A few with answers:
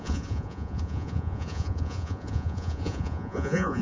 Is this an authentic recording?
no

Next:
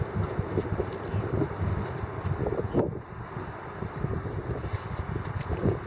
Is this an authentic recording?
yes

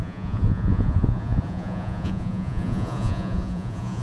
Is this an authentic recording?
no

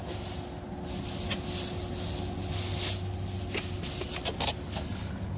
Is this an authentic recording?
yes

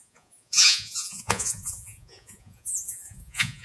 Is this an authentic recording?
no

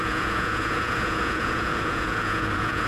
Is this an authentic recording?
no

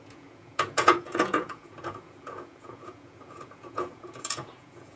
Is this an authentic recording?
no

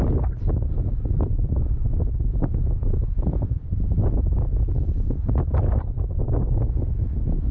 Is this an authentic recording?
yes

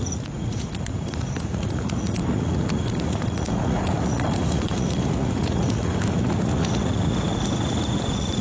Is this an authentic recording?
no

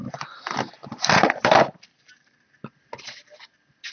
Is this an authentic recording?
yes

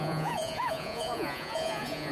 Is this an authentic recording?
no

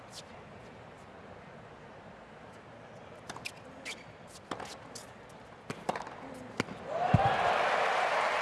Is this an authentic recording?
yes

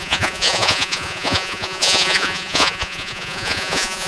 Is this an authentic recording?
no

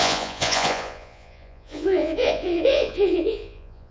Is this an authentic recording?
no